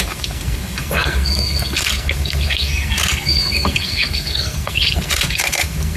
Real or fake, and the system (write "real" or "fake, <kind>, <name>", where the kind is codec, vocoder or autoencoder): fake, codec, SNAC